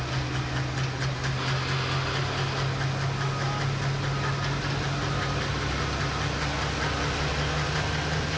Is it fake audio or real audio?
real